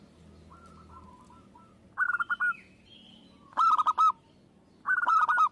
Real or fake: real